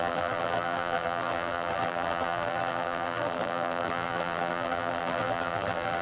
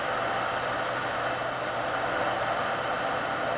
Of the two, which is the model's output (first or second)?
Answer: first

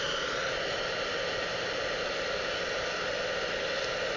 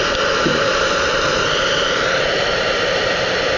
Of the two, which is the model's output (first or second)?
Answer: second